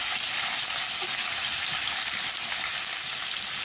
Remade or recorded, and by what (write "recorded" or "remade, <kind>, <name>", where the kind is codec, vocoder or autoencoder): recorded